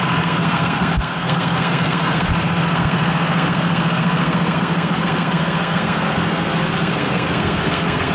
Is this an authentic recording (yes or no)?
no